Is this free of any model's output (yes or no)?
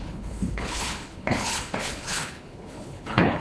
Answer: no